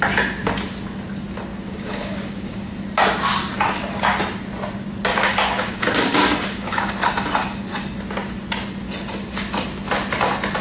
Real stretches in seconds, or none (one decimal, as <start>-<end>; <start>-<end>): 0.0-1.5; 2.7-5.1; 6.9-10.6